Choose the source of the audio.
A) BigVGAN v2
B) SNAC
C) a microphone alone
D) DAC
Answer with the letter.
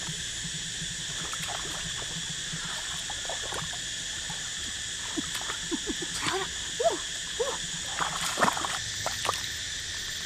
C